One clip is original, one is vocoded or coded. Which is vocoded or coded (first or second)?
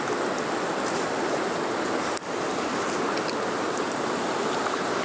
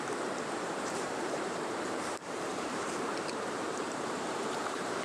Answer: second